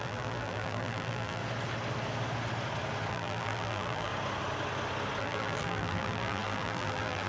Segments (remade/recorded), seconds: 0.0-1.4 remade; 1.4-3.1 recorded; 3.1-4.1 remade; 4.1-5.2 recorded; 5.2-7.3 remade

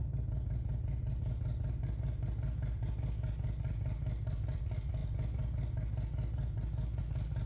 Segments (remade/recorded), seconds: 0.0-7.5 recorded

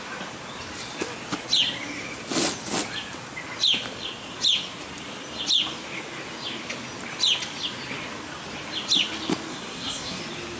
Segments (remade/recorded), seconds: 0.0-9.5 recorded; 9.5-10.2 remade; 10.2-10.6 recorded

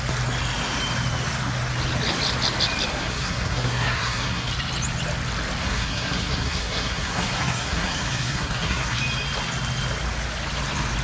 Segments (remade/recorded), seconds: 0.0-2.9 recorded; 2.9-4.5 remade; 4.5-5.6 recorded; 5.6-9.0 remade; 9.0-11.0 recorded

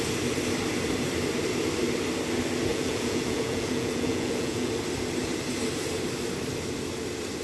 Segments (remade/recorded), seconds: 0.0-2.7 recorded; 2.7-4.7 remade; 4.7-7.4 recorded

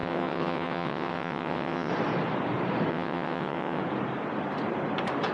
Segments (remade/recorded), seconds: 0.0-1.9 remade; 1.9-2.9 recorded; 2.9-3.8 remade; 3.8-5.3 recorded

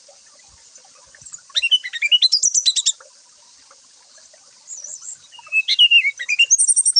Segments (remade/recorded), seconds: 0.0-7.0 recorded

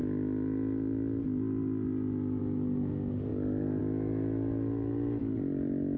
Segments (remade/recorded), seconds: 0.0-6.0 recorded